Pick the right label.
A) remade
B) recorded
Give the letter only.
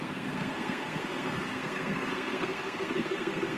A